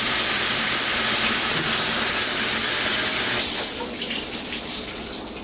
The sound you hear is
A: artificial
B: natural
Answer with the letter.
B